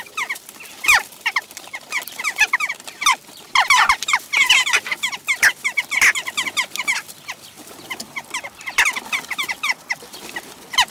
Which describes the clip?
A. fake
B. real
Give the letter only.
A